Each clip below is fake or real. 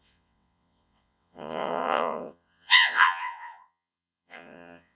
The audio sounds fake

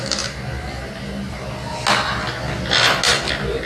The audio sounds real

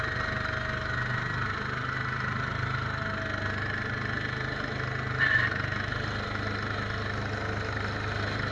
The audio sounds real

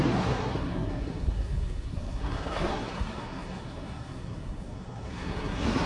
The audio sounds fake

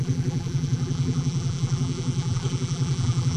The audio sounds fake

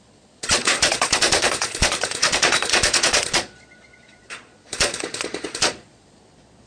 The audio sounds fake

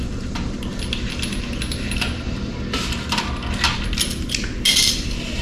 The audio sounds real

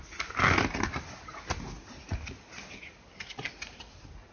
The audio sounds real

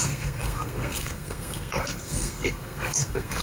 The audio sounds fake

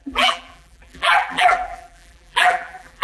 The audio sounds fake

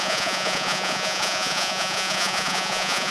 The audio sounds fake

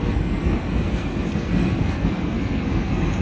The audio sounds fake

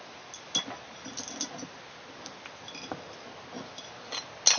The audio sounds real